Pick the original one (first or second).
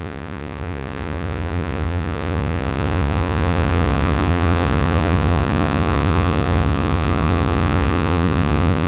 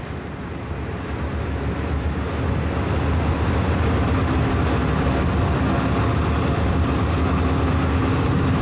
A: second